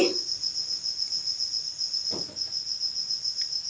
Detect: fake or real fake